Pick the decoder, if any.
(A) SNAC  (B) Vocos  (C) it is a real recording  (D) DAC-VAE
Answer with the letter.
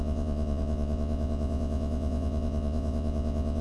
B